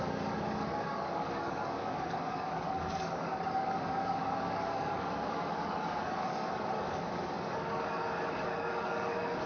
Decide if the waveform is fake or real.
fake